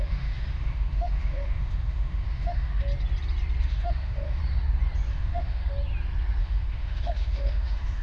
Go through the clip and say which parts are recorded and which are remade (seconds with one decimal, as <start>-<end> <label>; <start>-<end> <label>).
0.0-2.7 remade; 2.7-3.6 recorded; 3.6-4.4 remade; 4.4-5.1 recorded; 5.1-5.6 remade; 5.6-6.4 recorded; 6.4-8.0 remade